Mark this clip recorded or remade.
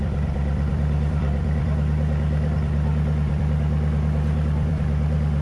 remade